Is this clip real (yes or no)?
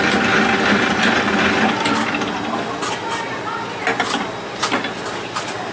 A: yes